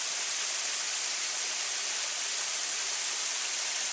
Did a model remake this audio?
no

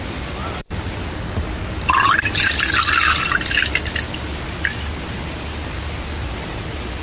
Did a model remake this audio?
no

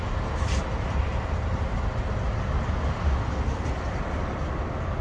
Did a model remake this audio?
no